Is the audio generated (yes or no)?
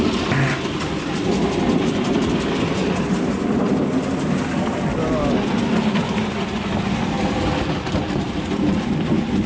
no